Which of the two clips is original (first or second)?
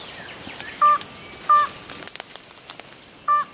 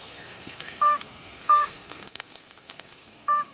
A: first